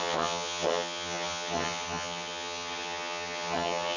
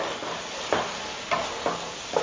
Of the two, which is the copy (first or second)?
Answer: first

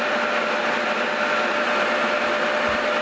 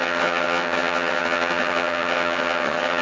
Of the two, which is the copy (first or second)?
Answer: second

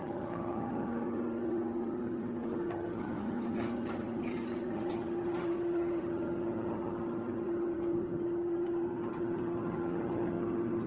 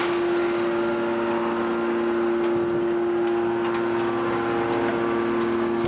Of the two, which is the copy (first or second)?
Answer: first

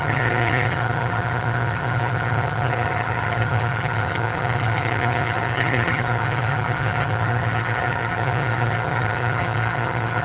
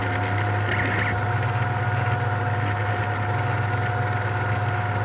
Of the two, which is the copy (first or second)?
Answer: first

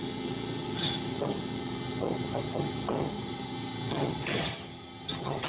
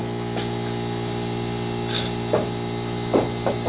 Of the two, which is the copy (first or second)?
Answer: first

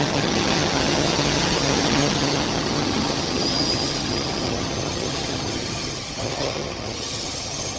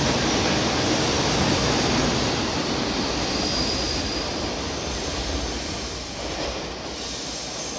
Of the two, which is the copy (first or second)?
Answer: first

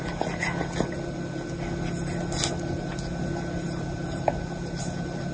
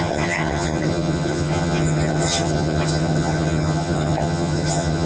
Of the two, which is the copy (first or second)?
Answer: second